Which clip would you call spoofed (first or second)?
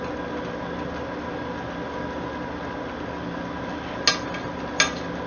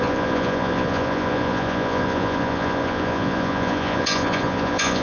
second